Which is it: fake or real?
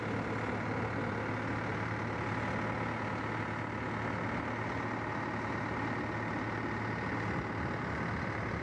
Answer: real